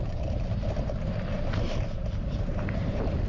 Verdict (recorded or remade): remade